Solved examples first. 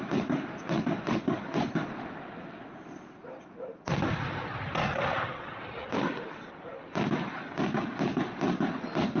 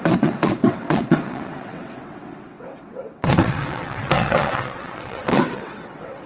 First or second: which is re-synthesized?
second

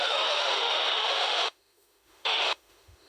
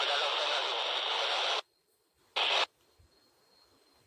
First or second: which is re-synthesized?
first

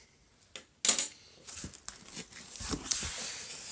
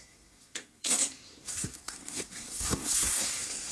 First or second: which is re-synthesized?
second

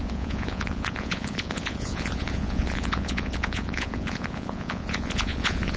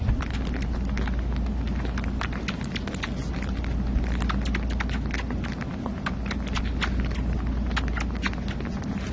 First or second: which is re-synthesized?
first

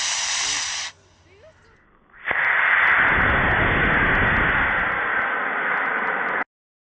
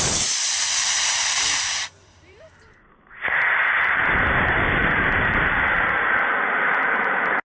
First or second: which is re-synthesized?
second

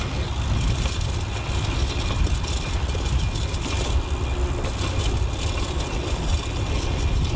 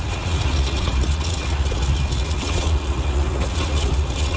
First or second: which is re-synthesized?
second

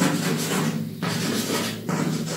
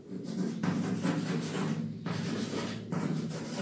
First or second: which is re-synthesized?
second